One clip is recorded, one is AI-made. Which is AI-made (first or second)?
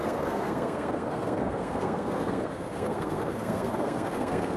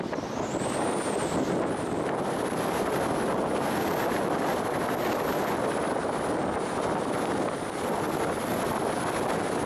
first